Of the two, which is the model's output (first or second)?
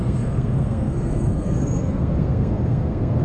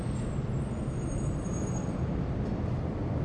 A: first